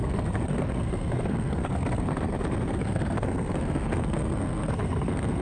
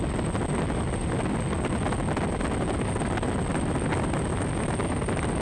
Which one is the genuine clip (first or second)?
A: second